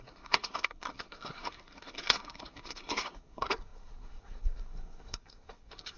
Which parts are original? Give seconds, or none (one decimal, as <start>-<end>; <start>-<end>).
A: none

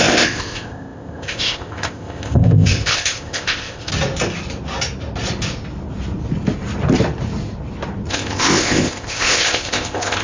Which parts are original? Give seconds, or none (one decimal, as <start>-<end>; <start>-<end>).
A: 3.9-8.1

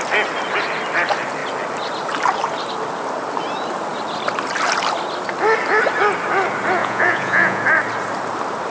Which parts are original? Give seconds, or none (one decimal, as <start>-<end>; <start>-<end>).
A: 0.0-6.8; 7.6-8.7

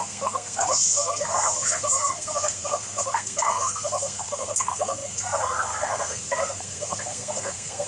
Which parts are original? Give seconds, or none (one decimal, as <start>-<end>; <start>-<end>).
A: none